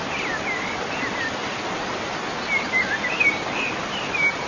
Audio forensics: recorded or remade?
recorded